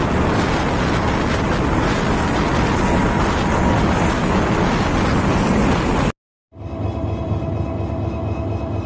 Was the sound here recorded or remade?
recorded